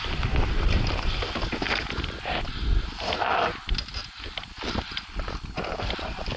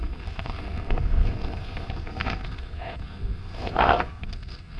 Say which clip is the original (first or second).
first